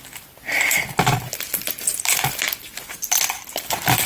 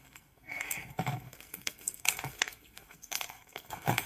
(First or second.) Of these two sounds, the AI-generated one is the second